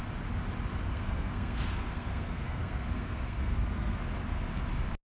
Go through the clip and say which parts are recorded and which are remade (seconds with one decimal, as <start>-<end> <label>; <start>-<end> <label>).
0.0-0.9 recorded; 0.9-4.0 remade; 4.0-5.1 recorded

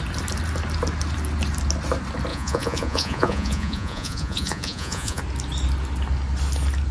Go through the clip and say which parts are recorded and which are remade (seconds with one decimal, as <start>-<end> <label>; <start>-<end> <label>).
0.0-2.3 recorded; 2.3-5.2 remade; 5.2-6.9 recorded

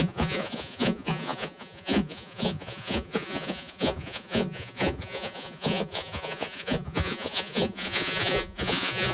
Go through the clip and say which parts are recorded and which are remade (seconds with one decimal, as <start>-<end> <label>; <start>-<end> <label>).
0.0-9.1 remade

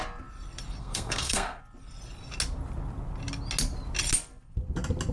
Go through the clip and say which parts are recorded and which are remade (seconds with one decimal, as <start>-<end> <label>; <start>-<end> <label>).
0.0-0.8 recorded; 0.8-1.6 remade; 1.6-5.1 recorded

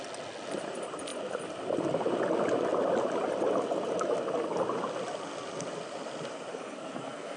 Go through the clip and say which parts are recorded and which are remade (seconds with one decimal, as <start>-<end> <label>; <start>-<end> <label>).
0.0-6.5 recorded; 6.5-7.4 remade